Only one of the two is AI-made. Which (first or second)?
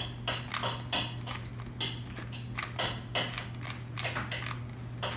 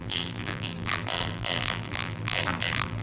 second